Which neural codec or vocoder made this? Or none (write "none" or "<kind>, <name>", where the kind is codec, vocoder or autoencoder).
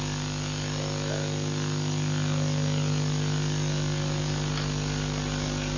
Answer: none